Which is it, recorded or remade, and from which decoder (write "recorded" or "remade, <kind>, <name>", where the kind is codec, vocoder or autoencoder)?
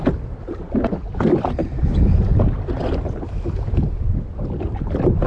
recorded